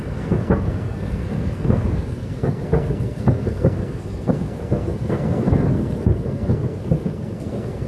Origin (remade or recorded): remade